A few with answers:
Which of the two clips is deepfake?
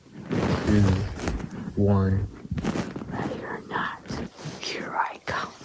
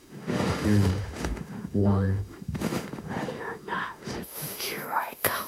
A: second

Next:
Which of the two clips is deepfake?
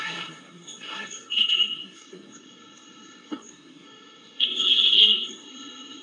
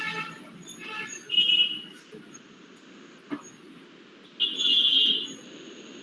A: first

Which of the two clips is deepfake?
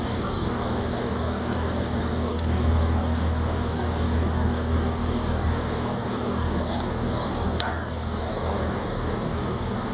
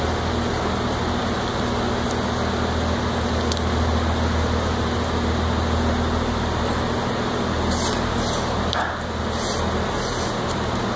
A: first